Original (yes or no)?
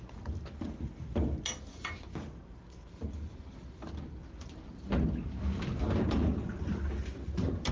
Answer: yes